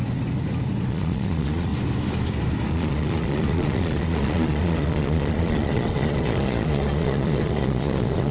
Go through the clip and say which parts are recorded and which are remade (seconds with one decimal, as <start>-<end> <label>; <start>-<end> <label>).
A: 0.0-0.9 recorded; 0.9-1.7 remade; 1.7-2.7 recorded; 2.7-8.3 remade